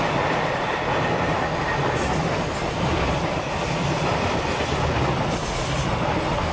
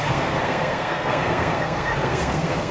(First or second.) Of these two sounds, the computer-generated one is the second